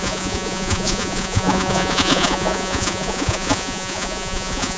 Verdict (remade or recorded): remade